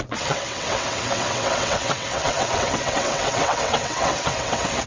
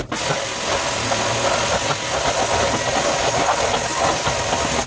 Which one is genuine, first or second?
second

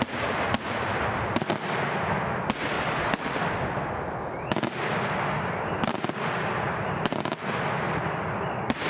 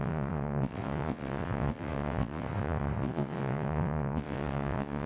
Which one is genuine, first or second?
first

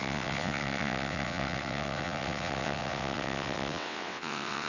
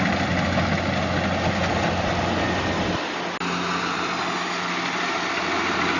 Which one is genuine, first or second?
second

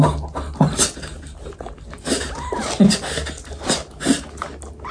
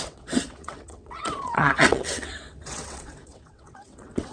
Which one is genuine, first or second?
first